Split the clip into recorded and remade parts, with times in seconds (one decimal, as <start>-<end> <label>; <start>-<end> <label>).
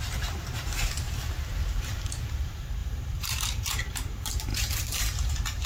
0.0-5.7 remade